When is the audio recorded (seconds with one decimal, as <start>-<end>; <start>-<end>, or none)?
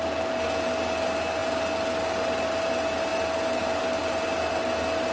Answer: 0.0-5.1